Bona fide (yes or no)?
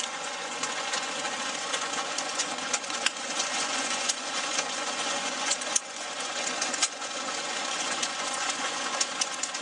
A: no